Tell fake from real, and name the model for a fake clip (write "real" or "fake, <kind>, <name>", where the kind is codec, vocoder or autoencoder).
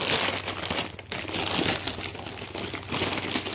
real